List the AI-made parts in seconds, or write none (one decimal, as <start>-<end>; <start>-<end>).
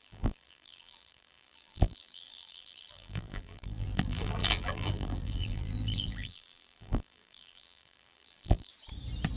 0.0-8.7